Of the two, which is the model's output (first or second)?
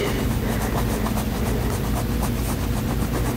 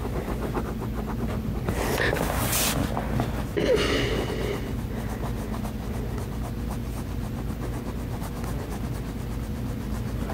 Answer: first